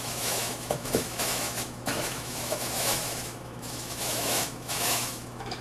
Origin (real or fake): fake